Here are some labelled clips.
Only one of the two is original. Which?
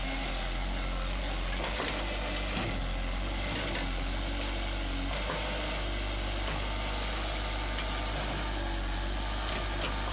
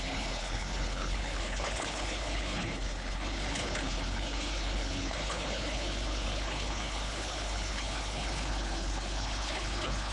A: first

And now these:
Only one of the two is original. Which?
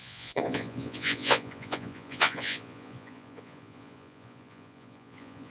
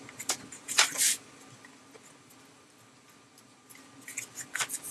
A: second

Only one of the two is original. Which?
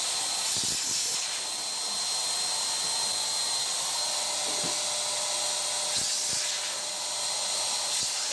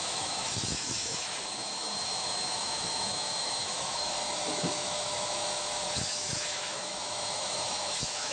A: first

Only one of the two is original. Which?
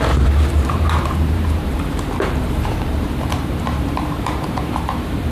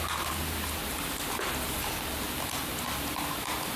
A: second